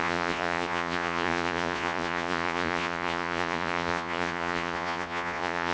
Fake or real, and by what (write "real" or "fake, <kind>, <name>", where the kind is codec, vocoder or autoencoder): fake, vocoder, Vocos